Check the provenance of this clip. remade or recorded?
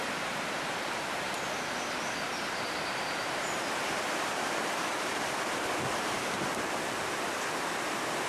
recorded